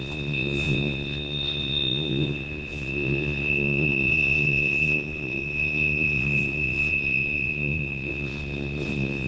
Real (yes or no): no